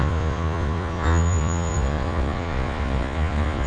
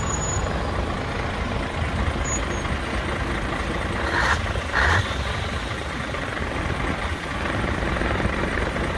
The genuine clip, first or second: second